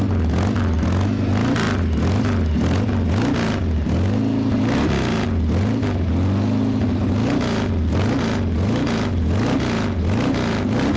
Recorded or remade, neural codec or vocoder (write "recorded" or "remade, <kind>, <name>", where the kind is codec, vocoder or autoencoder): recorded